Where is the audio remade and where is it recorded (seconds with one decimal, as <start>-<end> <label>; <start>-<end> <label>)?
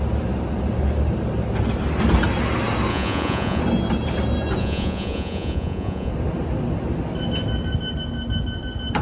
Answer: 0.0-2.9 recorded; 2.9-3.6 remade; 3.6-4.6 recorded; 4.6-6.1 remade; 6.1-9.0 recorded